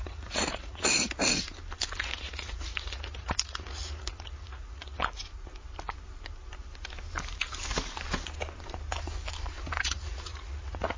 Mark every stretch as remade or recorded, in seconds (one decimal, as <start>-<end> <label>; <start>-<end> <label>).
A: 0.0-1.2 remade; 1.2-2.0 recorded; 2.0-5.0 remade; 5.0-9.8 recorded; 9.8-11.0 remade